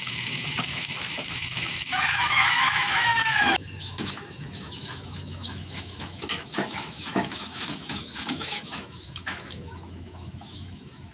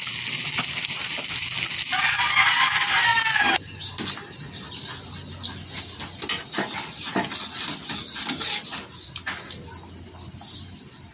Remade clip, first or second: first